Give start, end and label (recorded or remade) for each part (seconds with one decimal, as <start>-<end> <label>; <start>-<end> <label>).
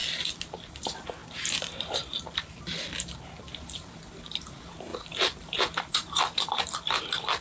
0.0-4.9 recorded; 4.9-6.6 remade; 6.6-7.4 recorded